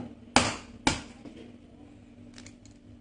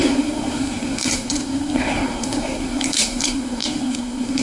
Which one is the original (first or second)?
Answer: first